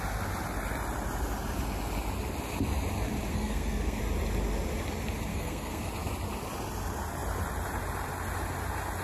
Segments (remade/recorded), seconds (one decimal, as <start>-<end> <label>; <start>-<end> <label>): 0.0-3.3 recorded; 3.3-4.0 remade; 4.0-5.3 recorded; 5.3-5.9 remade; 5.9-9.0 recorded